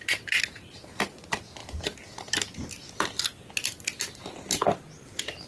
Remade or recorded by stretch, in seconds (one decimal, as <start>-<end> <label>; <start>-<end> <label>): 0.0-5.5 recorded